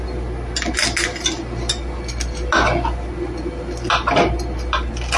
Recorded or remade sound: recorded